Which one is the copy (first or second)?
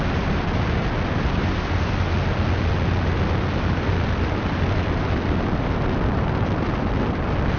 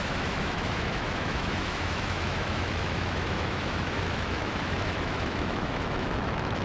second